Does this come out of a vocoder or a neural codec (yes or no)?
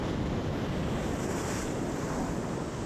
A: no